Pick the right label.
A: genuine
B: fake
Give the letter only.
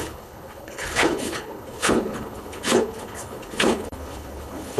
B